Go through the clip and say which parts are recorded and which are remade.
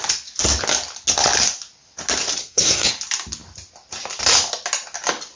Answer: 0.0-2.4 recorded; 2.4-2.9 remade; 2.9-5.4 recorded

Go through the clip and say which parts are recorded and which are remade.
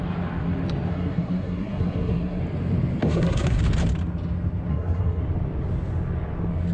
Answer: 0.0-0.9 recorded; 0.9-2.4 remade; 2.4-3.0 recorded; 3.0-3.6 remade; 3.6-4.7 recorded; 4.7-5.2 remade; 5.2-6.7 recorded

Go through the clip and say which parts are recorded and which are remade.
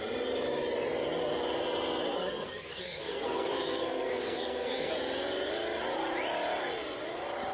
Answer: 0.0-2.1 recorded; 2.1-4.9 remade; 4.9-7.5 recorded